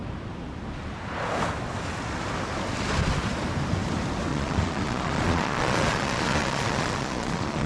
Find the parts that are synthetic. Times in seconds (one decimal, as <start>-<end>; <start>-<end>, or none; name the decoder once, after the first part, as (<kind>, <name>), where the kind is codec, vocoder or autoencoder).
4.3-7.7 (vocoder, Vocos)